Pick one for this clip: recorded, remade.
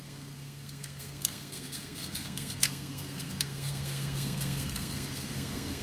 remade